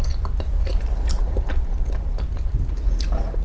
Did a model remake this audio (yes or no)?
no